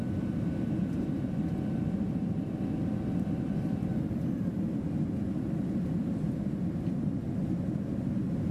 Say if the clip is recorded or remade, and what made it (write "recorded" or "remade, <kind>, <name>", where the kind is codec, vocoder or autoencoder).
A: recorded